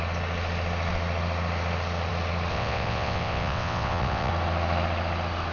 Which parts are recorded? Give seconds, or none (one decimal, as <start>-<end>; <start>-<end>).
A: 0.0-2.5; 4.3-5.5